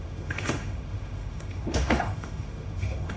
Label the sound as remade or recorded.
remade